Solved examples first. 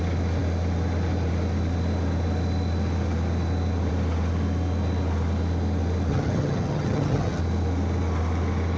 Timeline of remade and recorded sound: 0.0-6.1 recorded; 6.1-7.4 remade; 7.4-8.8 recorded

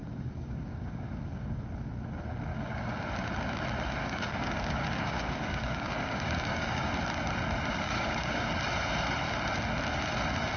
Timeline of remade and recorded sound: 0.0-1.6 remade; 1.6-2.5 recorded; 2.5-3.0 remade; 3.0-4.0 recorded; 4.0-6.9 remade; 6.9-7.7 recorded; 7.7-8.5 remade; 8.5-10.6 recorded

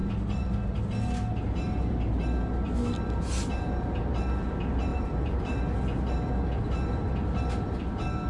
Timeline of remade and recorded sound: 0.0-0.8 remade; 0.8-4.9 recorded; 4.9-5.6 remade; 5.6-8.3 recorded